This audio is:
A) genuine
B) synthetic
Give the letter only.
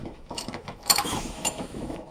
B